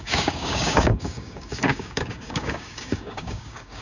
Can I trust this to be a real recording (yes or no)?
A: no